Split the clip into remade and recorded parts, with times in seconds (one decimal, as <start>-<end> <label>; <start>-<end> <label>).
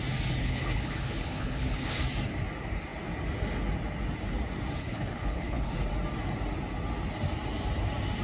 0.0-0.4 recorded; 0.4-2.0 remade; 2.0-4.8 recorded; 4.8-5.7 remade; 5.7-8.2 recorded